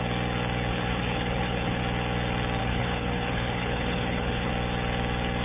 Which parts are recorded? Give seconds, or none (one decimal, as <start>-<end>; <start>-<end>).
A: 0.0-0.7; 1.8-2.6; 4.5-5.4